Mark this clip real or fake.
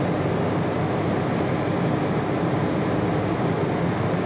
real